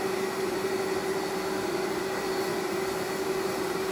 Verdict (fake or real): real